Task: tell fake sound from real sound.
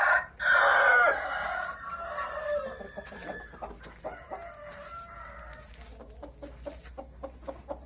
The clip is real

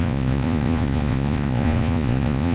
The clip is fake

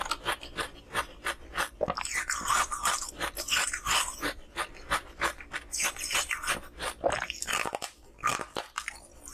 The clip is real